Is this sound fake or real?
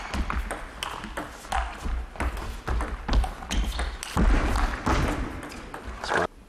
real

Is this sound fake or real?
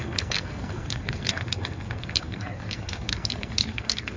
fake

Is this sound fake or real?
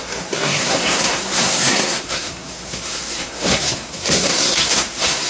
fake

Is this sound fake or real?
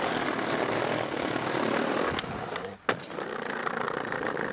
real